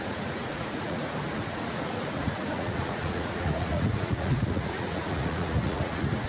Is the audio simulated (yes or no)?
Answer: yes